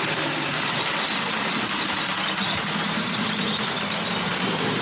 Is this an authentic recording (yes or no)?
yes